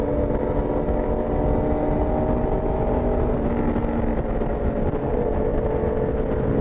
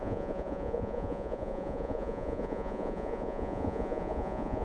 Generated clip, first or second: second